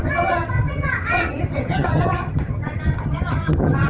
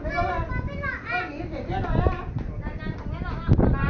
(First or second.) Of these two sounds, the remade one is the first